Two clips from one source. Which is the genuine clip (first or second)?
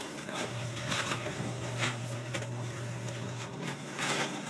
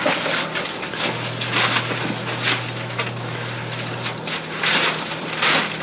second